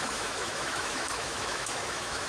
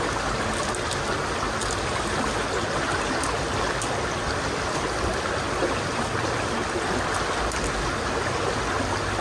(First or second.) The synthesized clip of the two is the first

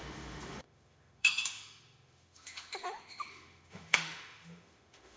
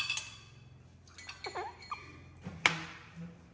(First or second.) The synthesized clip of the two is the first